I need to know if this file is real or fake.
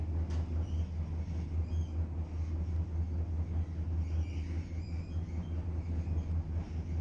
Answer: real